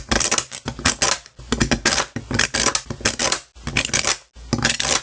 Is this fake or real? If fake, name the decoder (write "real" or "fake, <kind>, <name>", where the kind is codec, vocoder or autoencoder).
real